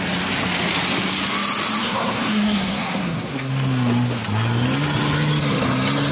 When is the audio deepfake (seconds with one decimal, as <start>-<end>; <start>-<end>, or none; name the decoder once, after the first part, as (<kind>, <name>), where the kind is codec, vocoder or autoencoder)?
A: 1.8-3.5 (codec, SNAC)